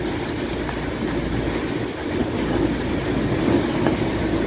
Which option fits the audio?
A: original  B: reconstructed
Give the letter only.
A